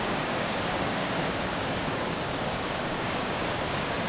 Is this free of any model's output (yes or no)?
no